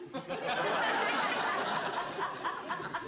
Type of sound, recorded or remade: recorded